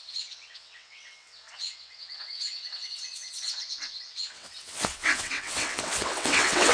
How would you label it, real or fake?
fake